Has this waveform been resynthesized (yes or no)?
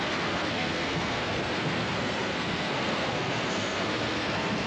yes